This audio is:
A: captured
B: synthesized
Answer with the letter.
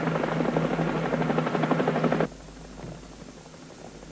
A